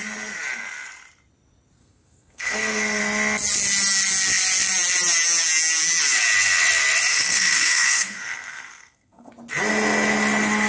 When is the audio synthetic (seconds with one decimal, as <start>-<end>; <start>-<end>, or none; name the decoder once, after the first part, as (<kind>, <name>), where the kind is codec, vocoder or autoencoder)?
1.8-3.0 (codec, SNAC); 7.1-9.3